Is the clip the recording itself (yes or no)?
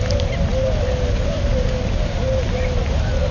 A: yes